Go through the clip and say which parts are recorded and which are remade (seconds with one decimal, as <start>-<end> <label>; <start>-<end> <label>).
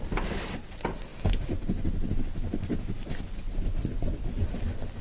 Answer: 0.0-5.0 recorded